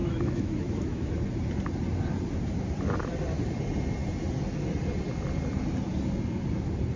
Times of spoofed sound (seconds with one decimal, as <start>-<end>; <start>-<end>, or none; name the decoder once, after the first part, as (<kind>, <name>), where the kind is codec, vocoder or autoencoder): 0.0-1.1 (autoencoder, DAC-VAE)